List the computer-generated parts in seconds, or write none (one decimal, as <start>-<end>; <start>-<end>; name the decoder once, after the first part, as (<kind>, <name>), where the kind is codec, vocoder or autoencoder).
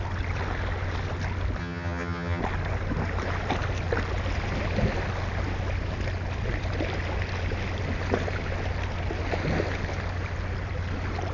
1.6-2.4 (vocoder, HiFi-GAN)